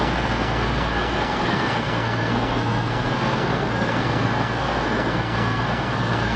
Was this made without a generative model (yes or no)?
no